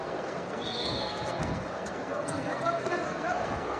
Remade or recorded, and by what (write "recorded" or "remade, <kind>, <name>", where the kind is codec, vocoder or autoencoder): remade, codec, SNAC